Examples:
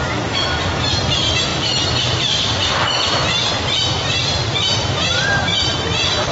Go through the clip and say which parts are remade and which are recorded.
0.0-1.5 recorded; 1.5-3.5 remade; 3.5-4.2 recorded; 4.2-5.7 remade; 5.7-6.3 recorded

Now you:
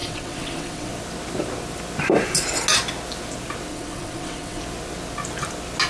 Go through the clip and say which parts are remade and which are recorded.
0.0-0.9 remade; 0.9-3.7 recorded; 3.7-4.6 remade; 4.6-5.9 recorded

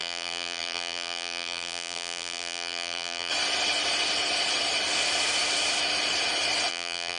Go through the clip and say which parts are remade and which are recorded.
0.0-3.3 remade; 3.3-6.7 recorded; 6.7-7.2 remade

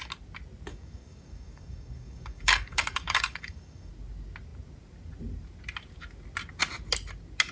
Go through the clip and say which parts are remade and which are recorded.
0.0-0.7 recorded; 0.7-3.9 remade; 3.9-7.5 recorded

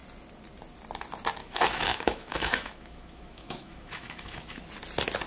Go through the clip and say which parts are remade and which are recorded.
0.0-1.4 recorded; 1.4-4.6 remade; 4.6-5.3 recorded